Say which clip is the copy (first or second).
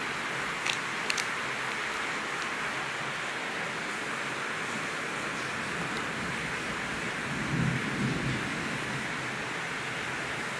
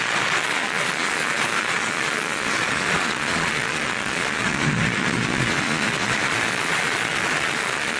second